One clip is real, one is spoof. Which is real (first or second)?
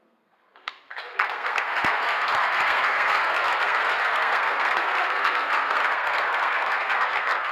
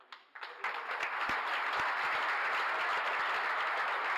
second